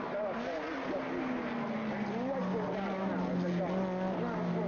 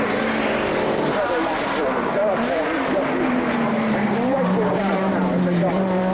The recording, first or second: first